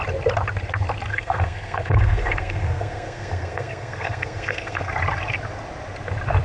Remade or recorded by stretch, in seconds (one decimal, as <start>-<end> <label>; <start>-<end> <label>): 0.0-1.1 recorded; 1.1-4.9 remade; 4.9-6.4 recorded